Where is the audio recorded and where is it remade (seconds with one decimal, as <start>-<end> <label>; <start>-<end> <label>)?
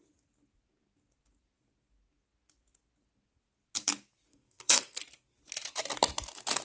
0.0-4.3 recorded; 4.3-5.0 remade; 5.0-6.6 recorded